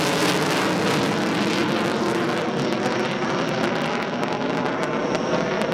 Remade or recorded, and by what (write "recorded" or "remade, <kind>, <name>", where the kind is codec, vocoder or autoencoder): recorded